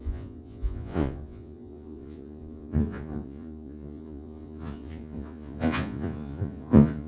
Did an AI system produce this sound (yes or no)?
yes